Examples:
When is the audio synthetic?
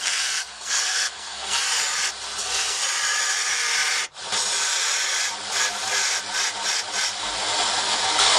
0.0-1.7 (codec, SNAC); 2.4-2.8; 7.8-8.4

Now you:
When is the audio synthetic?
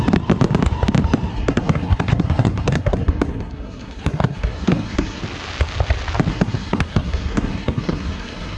1.3-5.2 (codec, SNAC); 6.3-8.6